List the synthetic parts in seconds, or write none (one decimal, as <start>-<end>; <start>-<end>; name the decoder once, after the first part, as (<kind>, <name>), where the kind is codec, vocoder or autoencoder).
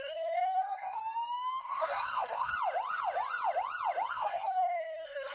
0.0-1.0 (codec, SNAC); 1.6-2.5; 4.1-5.3